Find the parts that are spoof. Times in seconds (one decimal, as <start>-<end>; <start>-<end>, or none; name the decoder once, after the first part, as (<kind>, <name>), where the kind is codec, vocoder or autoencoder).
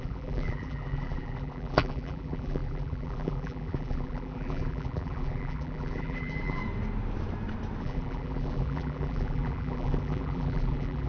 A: 0.0-6.6 (vocoder, BigVGAN v2); 7.8-11.1